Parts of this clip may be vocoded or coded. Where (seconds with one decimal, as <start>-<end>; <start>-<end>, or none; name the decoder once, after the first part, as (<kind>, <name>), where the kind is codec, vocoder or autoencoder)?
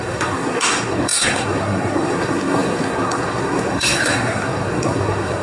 0.0-5.4 (codec, SNAC)